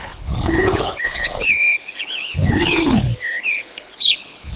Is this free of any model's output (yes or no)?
no